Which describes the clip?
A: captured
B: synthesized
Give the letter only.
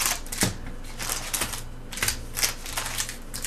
A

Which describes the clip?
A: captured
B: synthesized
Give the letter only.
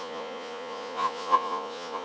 B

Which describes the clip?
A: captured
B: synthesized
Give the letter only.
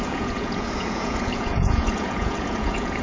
B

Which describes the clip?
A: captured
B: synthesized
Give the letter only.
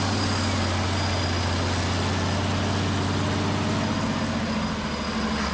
A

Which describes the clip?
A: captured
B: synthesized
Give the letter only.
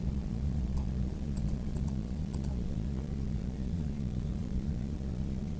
B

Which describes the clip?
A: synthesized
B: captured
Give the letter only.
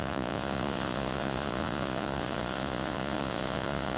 A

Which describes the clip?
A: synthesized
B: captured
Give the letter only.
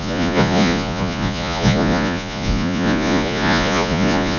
A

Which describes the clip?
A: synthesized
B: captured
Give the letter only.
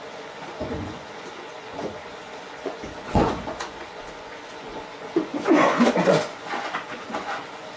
A